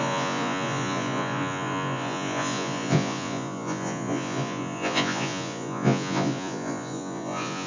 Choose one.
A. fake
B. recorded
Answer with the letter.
A